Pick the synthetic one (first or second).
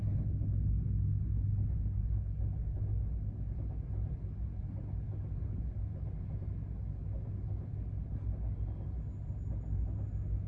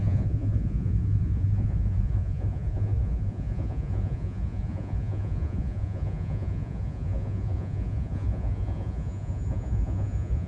second